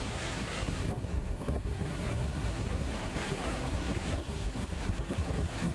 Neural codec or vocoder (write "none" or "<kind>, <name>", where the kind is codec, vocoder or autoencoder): codec, SNAC